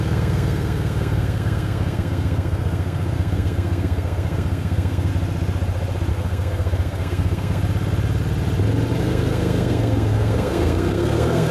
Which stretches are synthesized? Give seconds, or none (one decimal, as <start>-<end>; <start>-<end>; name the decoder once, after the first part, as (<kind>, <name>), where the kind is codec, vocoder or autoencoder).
0.0-5.1 (codec, SNAC); 6.1-7.6; 9.0-11.5

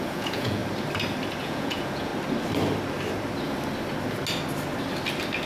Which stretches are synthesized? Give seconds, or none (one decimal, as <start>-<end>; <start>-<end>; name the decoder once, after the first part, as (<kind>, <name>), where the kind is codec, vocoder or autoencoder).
0.0-0.6 (vocoder, Vocos); 1.4-2.1

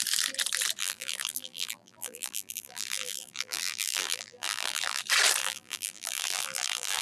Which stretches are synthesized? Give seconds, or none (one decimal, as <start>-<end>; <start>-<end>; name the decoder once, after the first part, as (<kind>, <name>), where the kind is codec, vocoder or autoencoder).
0.8-5.0 (vocoder, BigVGAN v2); 5.4-7.0

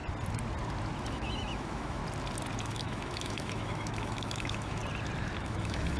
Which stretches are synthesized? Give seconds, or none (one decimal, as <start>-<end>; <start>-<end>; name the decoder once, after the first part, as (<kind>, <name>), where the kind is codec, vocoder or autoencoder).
1.1-2.0 (autoencoder, DAC-VAE); 2.6-4.8; 5.4-6.0

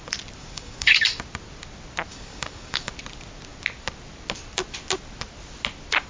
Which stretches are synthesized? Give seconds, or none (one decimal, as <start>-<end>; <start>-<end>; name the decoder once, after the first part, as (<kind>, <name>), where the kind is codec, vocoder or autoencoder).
0.4-1.2 (codec, DAC); 2.1-2.9

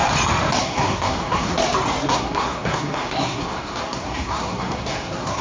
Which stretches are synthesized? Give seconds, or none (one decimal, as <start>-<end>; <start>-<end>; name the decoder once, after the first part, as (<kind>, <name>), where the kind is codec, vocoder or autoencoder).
0.6-1.5 (codec, SNAC); 2.1-5.4

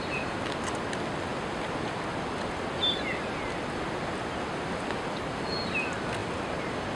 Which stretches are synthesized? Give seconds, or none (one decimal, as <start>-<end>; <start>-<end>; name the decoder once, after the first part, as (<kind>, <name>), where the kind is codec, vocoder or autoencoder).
none

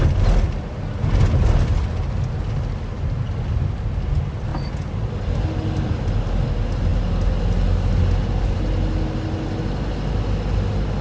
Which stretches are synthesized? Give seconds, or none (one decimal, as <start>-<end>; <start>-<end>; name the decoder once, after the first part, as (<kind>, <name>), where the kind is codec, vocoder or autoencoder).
none